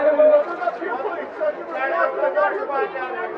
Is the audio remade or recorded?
recorded